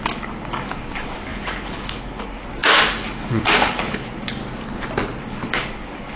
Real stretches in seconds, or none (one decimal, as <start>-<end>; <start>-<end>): 4.4-5.2